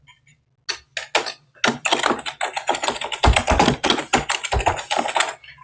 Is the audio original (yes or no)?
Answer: yes